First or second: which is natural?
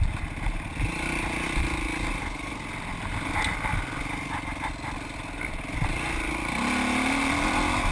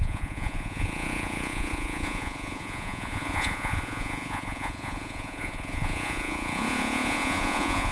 first